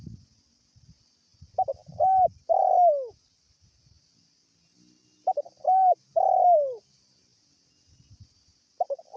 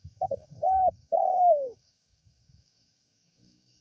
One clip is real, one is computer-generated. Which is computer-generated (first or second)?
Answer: second